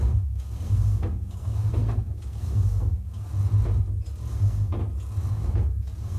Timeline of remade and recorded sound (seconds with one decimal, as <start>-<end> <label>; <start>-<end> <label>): 0.0-3.3 remade; 3.3-4.3 recorded; 4.3-4.8 remade; 4.8-5.3 recorded; 5.3-6.2 remade